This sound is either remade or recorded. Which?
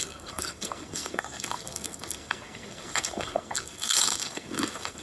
remade